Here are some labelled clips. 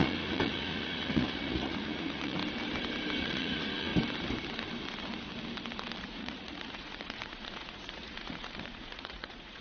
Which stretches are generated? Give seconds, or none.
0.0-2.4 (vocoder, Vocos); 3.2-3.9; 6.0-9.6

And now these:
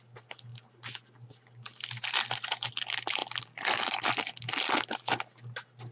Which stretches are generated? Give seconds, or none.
none

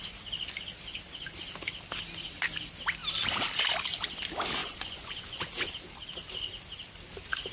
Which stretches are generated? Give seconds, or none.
4.6-5.4 (vocoder, Vocos)

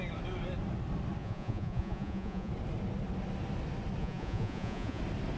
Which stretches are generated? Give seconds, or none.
1.2-2.5 (vocoder, Vocos); 4.0-5.0

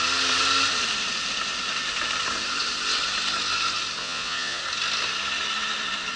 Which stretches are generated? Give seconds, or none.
4.0-4.6 (vocoder, Vocos)

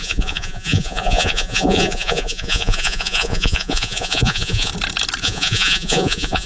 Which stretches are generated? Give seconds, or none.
0.0-4.7 (vocoder, Vocos); 5.2-6.5